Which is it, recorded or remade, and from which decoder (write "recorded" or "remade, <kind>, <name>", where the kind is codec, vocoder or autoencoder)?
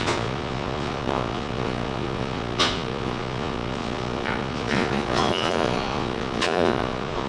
remade, vocoder, Vocos